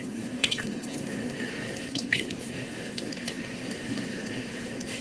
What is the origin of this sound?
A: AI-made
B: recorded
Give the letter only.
A